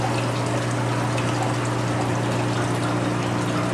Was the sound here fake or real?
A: real